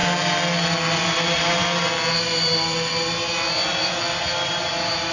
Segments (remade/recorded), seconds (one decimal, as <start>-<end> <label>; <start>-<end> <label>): 0.0-0.9 recorded; 0.9-1.6 remade; 1.6-4.2 recorded; 4.2-5.1 remade